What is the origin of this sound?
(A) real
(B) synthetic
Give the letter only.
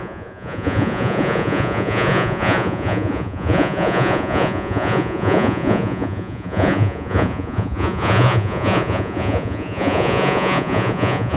B